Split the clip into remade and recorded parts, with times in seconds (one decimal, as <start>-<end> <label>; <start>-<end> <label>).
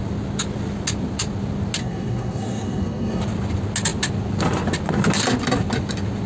0.0-1.8 recorded; 1.8-3.2 remade; 3.2-6.3 recorded